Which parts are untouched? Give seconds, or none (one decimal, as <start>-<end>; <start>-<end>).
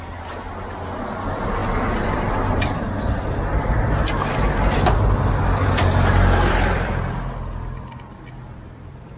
none